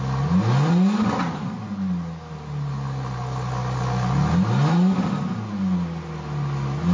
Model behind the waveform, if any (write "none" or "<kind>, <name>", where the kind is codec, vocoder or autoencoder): none